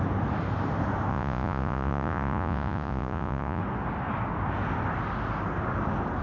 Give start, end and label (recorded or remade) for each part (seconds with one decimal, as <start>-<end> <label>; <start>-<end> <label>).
0.0-1.1 recorded; 1.1-3.6 remade; 3.6-6.2 recorded